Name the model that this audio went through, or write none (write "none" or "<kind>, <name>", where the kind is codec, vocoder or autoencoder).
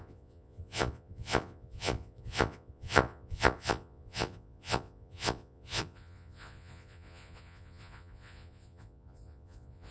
vocoder, Vocos